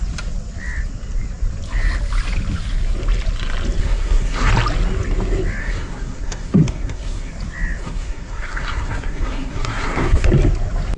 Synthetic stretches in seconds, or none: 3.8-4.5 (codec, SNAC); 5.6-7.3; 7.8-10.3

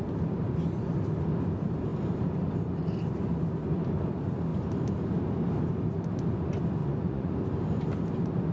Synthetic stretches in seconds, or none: 6.8-7.3 (vocoder, Vocos)

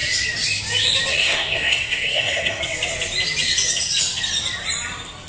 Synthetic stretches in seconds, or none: 1.1-2.6 (codec, SNAC)

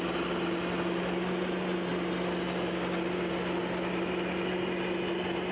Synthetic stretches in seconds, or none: none

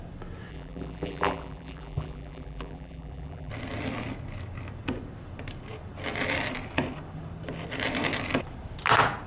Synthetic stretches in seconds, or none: 0.5-3.5 (vocoder, BigVGAN v2)

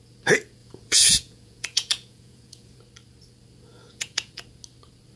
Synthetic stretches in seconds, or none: 0.6-2.8 (vocoder, Vocos); 3.7-4.4